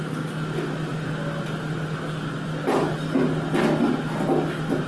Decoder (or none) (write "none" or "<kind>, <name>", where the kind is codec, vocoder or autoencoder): none